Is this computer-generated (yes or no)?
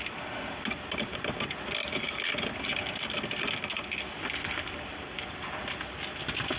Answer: no